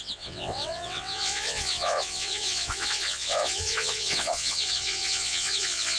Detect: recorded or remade remade